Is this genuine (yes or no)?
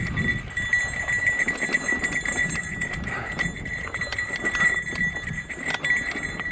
yes